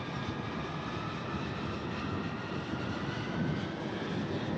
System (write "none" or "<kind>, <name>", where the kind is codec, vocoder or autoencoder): none